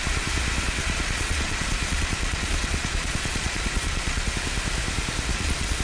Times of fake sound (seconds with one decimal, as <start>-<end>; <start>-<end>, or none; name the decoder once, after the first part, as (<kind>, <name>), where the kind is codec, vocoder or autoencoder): 0.8-4.3 (vocoder, Vocos); 5.3-5.8